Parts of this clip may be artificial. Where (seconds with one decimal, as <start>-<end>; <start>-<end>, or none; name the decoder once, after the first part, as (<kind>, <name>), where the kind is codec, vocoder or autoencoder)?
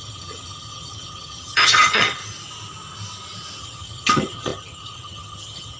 0.0-2.2 (vocoder, HiFi-GAN); 3.6-5.8